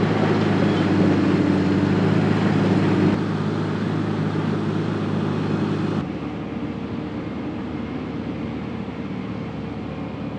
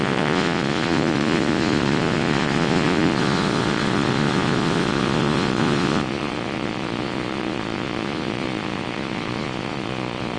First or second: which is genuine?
first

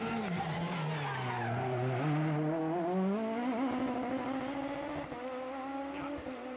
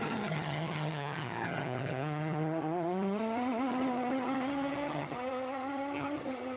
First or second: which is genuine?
first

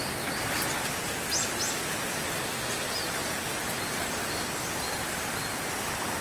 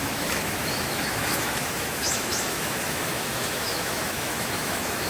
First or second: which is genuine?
first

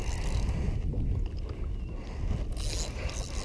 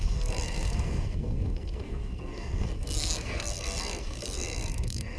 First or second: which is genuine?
first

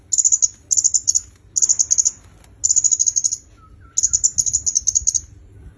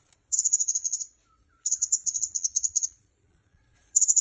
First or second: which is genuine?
first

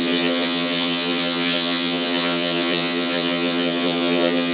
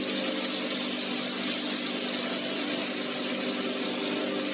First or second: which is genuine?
second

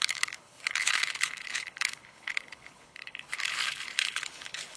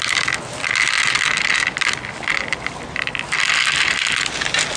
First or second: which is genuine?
second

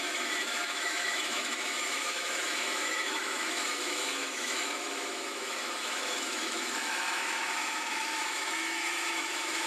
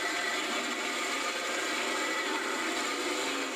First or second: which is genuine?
second